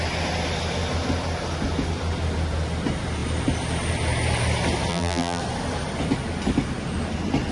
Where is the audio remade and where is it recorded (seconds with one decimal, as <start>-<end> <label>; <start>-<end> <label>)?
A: 0.0-4.9 recorded; 4.9-5.4 remade; 5.4-7.5 recorded